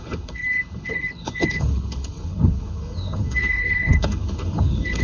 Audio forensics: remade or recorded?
remade